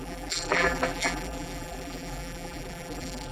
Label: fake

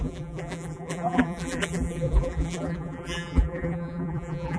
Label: fake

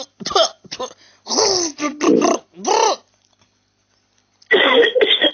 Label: real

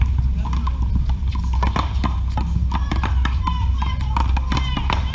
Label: real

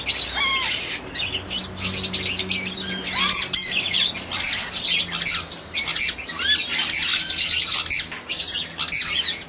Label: real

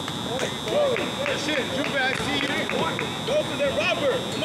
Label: real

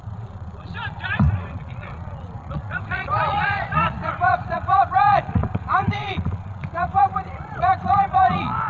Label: fake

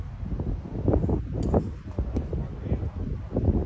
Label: real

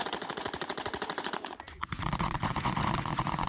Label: fake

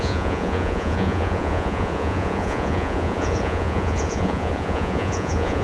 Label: fake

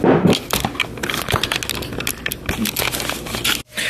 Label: real